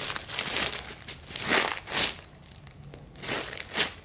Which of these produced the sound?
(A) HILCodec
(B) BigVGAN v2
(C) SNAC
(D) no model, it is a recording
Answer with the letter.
D